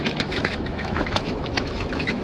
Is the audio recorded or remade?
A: remade